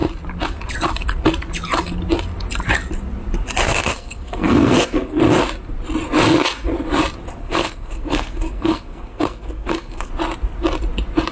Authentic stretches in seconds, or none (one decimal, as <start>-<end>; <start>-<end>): 0.0-3.7; 5.2-7.4; 10.1-11.3